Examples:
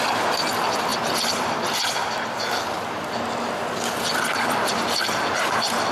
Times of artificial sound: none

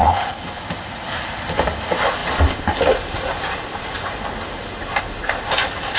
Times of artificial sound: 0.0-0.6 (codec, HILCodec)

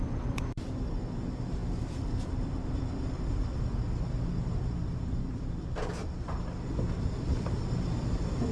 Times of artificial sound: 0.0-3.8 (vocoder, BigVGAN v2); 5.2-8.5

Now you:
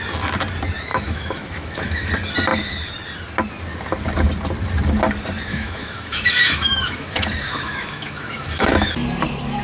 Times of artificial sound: 0.9-2.1 (autoencoder, DAC-VAE); 5.5-8.9

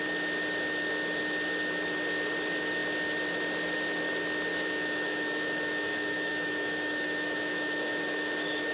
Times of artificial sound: 4.5-8.7 (autoencoder, DAC-VAE)

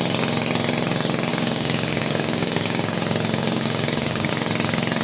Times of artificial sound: 1.3-4.3 (codec, DAC)